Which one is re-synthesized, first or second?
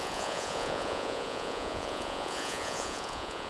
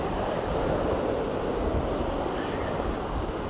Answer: first